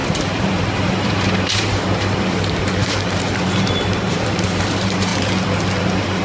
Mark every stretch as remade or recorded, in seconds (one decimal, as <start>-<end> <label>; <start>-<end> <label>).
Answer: 0.0-5.1 remade; 5.1-5.8 recorded; 5.8-6.2 remade